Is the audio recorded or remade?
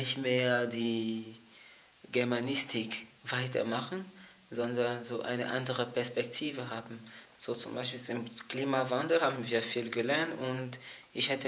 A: remade